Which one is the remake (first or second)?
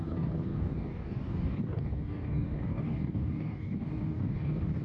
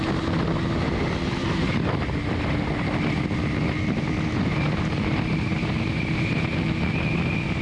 first